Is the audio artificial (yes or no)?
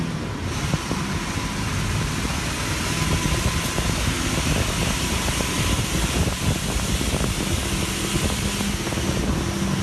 no